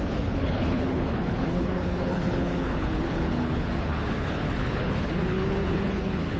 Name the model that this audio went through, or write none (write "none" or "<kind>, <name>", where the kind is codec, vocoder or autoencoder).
codec, HILCodec